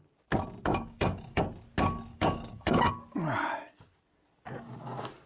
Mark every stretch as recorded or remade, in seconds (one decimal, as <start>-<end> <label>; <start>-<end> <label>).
0.0-0.7 recorded; 0.7-1.4 remade; 1.4-2.1 recorded; 2.1-2.9 remade; 2.9-5.3 recorded